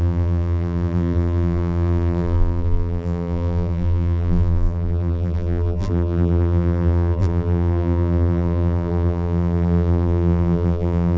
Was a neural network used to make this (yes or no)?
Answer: yes